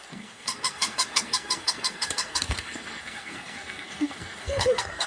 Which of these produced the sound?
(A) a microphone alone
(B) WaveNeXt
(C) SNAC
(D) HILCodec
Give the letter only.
C